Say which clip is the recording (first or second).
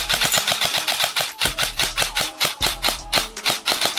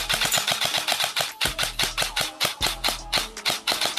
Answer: second